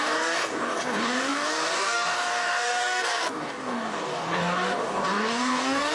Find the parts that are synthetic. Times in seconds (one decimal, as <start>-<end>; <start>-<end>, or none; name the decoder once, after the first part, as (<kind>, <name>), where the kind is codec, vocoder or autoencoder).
0.0-5.9 (codec, DAC)